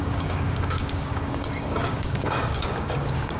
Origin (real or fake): fake